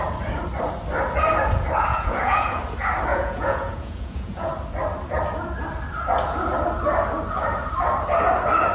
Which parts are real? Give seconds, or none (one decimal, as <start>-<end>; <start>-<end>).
0.0-1.9; 2.6-3.1; 4.5-8.7